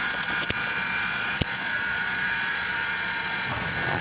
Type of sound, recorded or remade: remade